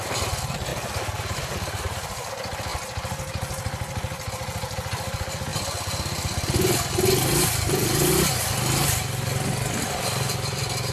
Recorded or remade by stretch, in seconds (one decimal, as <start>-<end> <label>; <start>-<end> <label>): 0.0-2.7 remade; 2.7-4.3 recorded; 4.3-10.9 remade